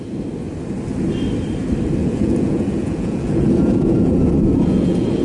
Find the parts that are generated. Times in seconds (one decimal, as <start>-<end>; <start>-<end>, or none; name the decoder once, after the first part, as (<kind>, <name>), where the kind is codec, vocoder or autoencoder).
2.0-5.2 (vocoder, Vocos)

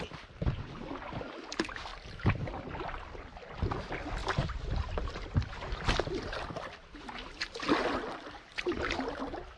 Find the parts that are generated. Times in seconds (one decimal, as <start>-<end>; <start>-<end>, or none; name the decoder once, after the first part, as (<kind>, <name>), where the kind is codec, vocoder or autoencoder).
4.2-7.5 (vocoder, BigVGAN v2)